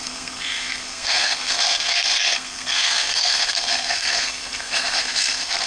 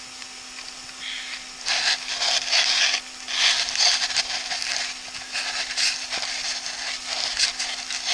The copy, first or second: first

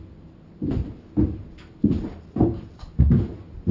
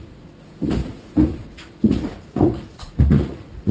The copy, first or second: second